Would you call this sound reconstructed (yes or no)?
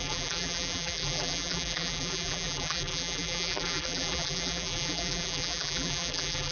yes